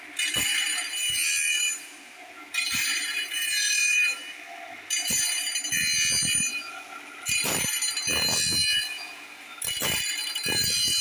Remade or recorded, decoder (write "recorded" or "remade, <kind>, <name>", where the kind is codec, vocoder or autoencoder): recorded